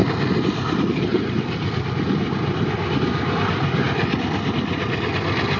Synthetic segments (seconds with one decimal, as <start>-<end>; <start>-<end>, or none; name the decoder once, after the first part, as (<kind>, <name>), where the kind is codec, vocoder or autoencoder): none